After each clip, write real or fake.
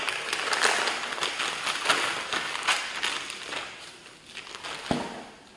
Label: real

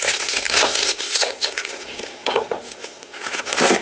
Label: fake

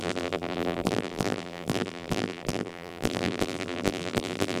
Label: fake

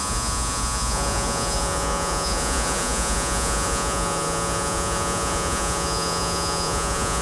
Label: fake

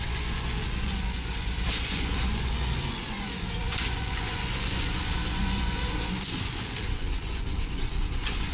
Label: fake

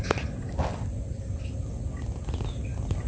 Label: real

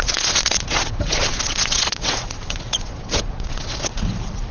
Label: fake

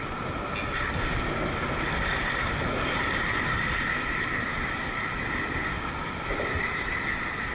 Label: real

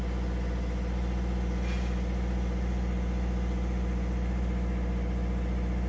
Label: real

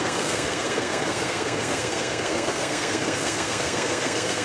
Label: fake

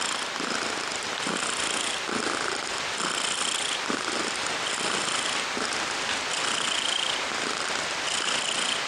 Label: fake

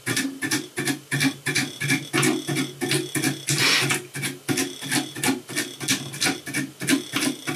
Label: real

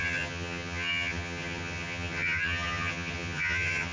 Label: fake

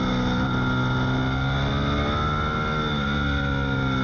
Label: real